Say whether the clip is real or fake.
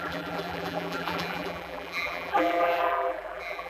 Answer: fake